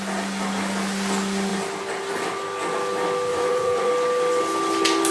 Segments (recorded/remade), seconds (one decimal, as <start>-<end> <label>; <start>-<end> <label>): 0.0-3.3 recorded; 3.3-3.9 remade; 3.9-5.1 recorded